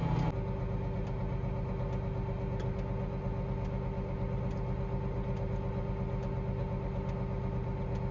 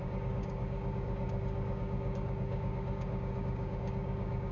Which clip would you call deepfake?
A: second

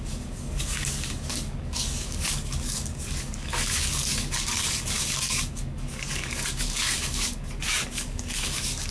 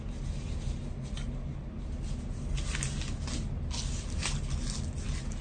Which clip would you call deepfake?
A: first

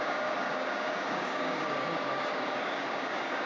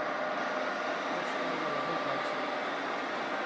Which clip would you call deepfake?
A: first